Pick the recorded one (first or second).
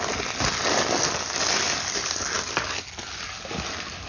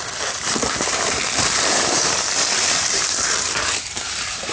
first